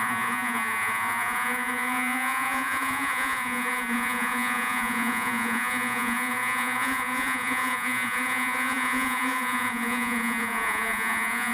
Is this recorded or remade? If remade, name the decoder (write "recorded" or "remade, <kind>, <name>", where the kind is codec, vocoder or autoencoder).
remade, vocoder, Vocos